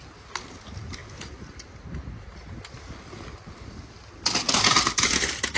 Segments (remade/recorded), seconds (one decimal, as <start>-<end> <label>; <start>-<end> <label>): 0.0-5.6 recorded